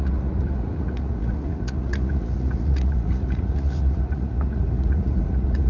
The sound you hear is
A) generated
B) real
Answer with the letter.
A